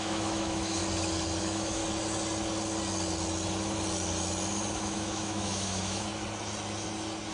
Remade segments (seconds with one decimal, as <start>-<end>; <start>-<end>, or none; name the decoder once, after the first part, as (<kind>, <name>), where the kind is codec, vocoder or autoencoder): 0.0-0.8 (autoencoder, DAC-VAE); 1.4-1.8; 4.7-6.1